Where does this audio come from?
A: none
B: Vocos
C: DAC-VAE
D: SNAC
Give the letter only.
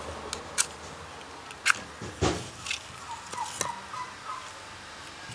A